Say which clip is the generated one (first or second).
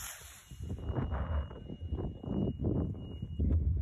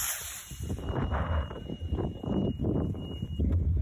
second